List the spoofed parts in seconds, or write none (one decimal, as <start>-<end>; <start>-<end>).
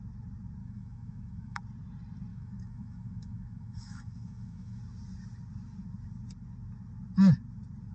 0.6-1.6; 2.3-4.8